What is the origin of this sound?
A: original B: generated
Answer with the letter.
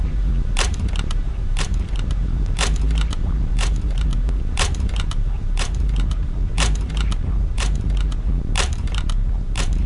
B